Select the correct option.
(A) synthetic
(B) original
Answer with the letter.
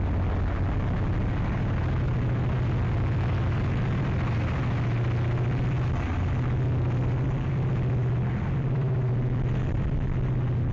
B